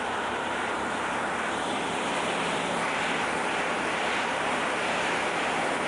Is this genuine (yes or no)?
yes